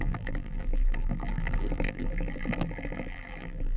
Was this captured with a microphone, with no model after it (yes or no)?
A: no